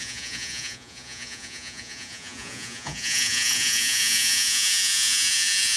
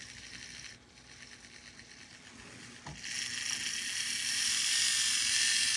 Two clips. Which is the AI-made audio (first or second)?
first